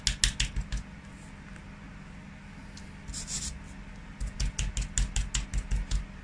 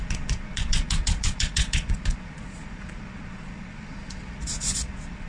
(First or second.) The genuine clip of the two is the first